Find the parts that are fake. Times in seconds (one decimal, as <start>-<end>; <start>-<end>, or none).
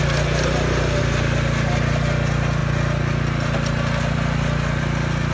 none